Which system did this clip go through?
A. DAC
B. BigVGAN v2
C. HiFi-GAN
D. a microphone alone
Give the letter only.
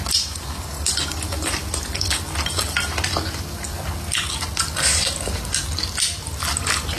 D